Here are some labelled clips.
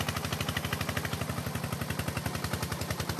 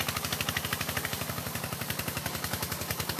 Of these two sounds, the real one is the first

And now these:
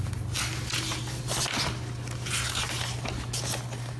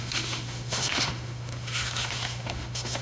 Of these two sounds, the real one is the first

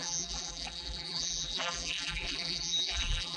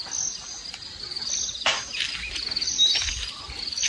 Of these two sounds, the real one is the second